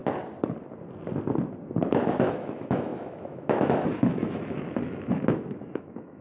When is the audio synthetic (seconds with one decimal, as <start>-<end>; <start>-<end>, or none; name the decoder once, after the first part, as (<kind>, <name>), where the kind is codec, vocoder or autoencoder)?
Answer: 1.8-6.2 (autoencoder, DAC-VAE)